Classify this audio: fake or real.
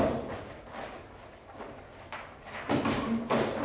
real